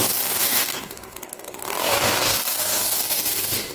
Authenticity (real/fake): fake